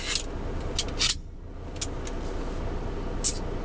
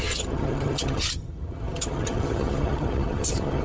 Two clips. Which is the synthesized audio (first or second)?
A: second